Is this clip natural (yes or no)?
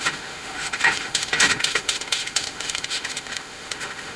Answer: no